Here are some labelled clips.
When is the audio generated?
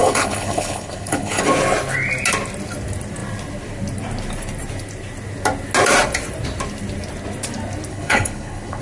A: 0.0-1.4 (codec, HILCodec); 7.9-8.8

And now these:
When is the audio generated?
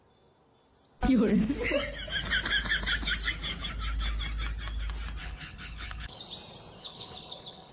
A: 5.2-6.2 (codec, HILCodec); 6.8-7.7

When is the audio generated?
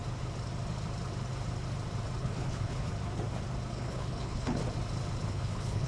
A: 2.2-2.9 (codec, HILCodec); 3.7-4.6; 5.3-5.9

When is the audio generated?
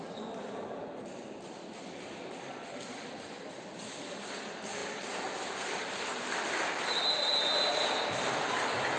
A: none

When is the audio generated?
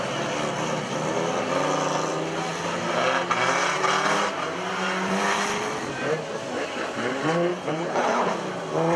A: 7.5-8.3 (codec, HILCodec)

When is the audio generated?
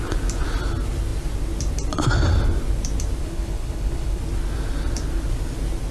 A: 3.2-4.2 (codec, HILCodec)